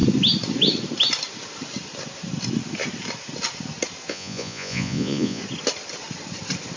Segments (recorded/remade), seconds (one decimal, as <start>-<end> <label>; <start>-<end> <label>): 0.0-4.1 recorded; 4.1-5.4 remade; 5.4-6.8 recorded

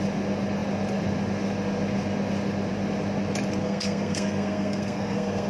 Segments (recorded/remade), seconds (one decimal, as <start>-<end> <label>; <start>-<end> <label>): 0.0-3.6 recorded; 3.6-5.5 remade

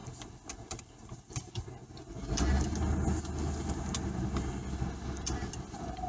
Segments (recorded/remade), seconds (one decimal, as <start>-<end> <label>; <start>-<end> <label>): 0.0-6.1 recorded

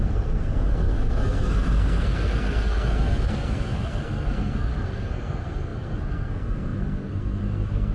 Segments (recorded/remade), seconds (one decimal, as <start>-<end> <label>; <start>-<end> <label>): 0.0-7.9 remade

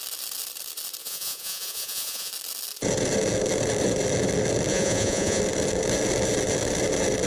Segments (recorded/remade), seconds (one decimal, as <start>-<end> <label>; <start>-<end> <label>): 0.0-1.0 recorded; 1.0-2.3 remade; 2.3-4.7 recorded; 4.7-5.4 remade; 5.4-7.3 recorded